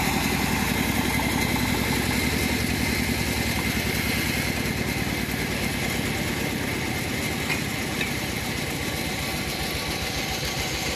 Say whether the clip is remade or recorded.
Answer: recorded